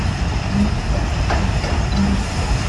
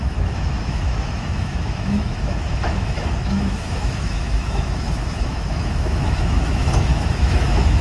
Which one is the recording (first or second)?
first